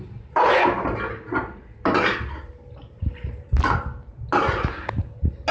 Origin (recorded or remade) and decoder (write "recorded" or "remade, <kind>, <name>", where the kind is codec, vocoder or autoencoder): recorded